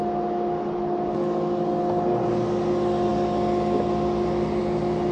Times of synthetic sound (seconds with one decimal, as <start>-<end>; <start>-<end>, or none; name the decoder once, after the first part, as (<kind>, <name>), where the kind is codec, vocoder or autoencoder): none